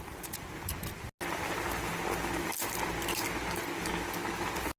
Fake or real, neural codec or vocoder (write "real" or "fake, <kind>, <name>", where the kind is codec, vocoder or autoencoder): real